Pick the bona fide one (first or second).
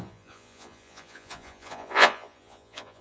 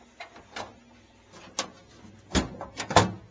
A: second